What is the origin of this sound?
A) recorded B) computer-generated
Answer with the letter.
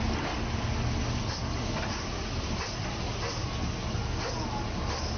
A